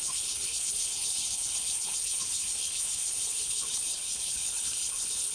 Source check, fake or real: fake